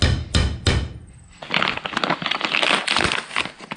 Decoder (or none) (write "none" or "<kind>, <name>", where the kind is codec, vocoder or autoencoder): none